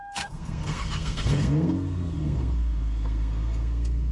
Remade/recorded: remade